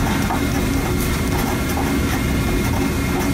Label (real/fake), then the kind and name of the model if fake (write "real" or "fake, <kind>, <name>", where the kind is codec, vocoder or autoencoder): real